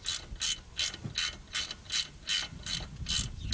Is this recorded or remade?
recorded